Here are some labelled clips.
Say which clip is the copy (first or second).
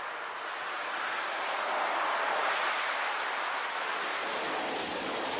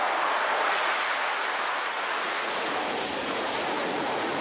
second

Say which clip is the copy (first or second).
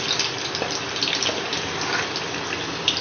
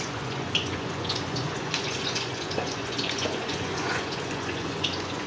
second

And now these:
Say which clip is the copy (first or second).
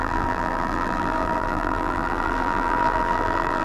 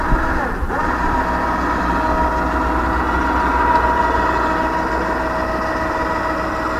first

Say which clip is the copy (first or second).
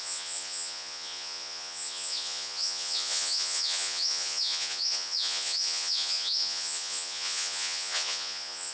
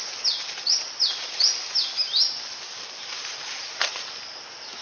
first